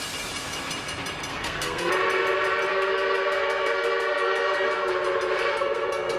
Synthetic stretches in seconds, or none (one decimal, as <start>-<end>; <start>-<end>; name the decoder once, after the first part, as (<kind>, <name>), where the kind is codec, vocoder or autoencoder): 1.3-1.9 (codec, SNAC); 2.7-4.9; 5.5-6.2